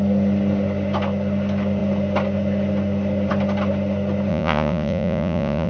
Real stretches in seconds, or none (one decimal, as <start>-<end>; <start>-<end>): 0.0-4.3